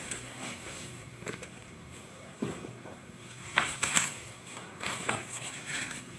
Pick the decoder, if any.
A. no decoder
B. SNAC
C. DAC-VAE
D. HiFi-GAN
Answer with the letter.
B